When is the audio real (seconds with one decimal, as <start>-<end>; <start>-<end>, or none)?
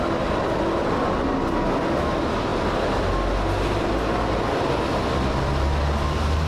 0.0-6.5